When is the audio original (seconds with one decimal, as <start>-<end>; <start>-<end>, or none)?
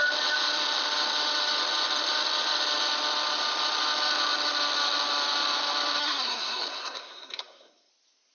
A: 0.0-6.0; 7.9-8.3